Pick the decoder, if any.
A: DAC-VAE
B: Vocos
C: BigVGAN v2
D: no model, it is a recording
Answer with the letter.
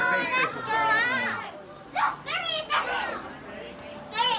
D